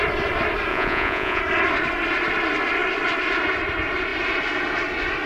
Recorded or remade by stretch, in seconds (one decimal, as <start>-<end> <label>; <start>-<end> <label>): 0.0-0.7 recorded; 0.7-1.4 remade; 1.4-5.3 recorded